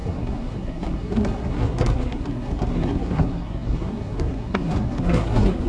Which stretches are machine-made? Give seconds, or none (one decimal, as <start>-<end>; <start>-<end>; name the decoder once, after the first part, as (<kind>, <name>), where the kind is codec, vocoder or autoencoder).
0.0-5.7 (codec, SNAC)